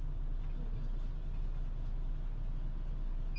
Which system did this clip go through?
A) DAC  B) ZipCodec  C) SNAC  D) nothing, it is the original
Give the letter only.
D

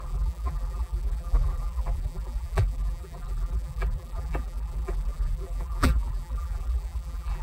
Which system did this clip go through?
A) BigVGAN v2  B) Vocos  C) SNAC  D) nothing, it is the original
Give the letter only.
A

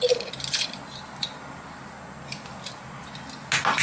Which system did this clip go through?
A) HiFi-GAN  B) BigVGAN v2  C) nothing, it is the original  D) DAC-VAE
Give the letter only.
C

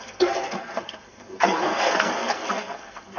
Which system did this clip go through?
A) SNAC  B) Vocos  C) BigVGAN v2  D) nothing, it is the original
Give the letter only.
A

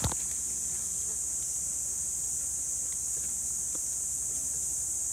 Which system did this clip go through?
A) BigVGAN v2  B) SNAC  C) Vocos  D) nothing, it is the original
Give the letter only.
D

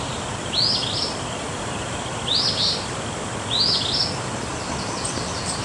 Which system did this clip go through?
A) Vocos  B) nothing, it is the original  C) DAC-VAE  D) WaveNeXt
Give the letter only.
B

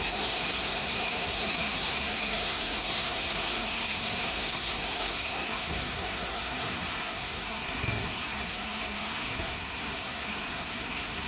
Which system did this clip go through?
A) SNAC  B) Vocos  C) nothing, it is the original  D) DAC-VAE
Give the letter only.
A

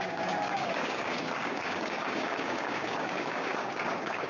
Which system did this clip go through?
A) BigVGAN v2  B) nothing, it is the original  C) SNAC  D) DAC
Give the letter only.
D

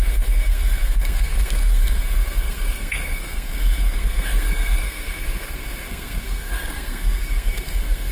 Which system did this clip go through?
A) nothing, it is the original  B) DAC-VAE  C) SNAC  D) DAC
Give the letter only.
C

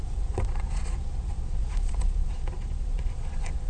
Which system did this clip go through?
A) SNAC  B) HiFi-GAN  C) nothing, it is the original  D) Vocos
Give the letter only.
D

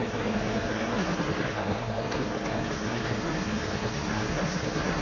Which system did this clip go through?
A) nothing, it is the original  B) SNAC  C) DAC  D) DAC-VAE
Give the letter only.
B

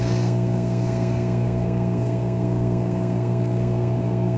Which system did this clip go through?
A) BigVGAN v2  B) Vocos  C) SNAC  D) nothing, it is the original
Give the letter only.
C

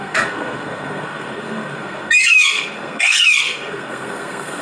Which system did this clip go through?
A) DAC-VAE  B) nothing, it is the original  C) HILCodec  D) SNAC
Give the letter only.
D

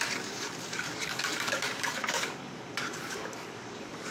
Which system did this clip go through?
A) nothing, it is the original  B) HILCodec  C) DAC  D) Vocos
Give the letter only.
C